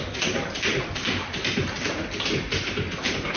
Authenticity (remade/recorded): recorded